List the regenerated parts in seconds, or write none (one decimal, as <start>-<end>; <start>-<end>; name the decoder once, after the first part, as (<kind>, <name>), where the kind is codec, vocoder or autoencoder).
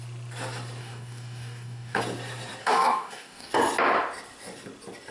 0.8-2.0 (codec, DAC); 2.6-3.5